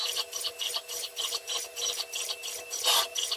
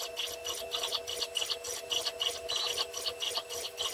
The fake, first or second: first